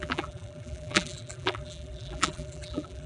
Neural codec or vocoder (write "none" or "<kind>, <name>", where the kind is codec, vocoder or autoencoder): vocoder, BigVGAN v2